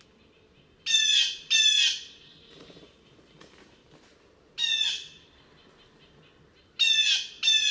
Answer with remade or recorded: recorded